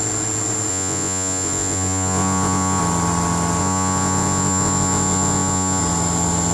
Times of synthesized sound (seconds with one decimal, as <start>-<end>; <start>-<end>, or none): 0.7-2.8; 3.6-5.8